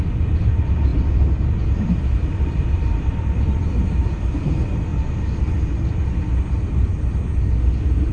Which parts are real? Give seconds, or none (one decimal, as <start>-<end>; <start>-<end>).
0.9-1.5; 4.9-8.1